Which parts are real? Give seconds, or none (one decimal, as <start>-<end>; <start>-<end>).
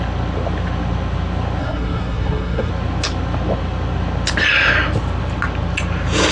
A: 0.0-1.6; 2.7-6.3